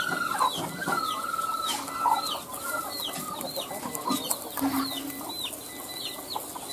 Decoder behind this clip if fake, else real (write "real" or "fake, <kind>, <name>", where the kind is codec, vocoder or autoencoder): real